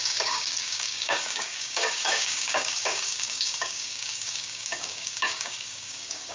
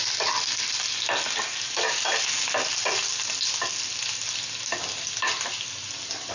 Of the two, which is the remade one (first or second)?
first